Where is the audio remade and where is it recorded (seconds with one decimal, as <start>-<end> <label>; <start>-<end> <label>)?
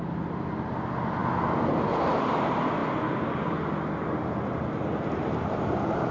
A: 0.0-6.1 recorded